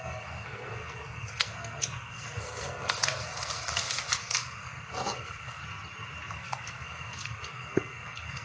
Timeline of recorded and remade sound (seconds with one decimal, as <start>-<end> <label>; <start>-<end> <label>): 0.0-5.6 remade; 5.6-6.3 recorded; 6.3-8.4 remade